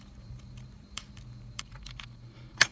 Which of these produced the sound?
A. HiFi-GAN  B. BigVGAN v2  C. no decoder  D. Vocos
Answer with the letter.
B